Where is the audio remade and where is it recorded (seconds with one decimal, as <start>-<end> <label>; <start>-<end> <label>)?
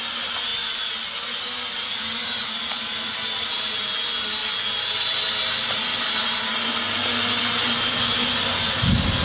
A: 0.0-9.2 recorded